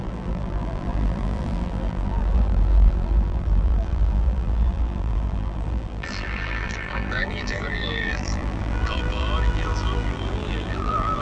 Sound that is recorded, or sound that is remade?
remade